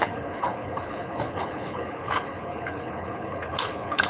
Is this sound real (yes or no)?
no